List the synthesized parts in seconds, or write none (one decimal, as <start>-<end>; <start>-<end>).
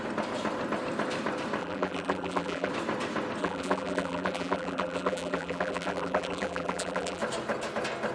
1.6-2.7; 3.4-7.2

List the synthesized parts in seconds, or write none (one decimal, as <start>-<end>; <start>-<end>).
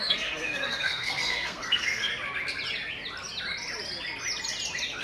0.0-2.1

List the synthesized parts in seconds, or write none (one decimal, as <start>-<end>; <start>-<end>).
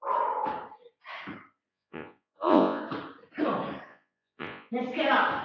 1.7-2.8; 3.9-4.7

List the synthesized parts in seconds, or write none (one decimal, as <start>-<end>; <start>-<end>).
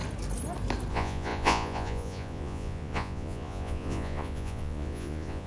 0.9-5.5